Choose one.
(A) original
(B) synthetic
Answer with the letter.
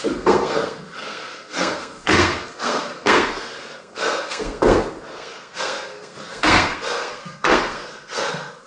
B